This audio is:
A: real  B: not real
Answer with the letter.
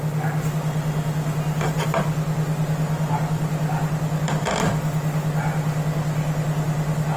A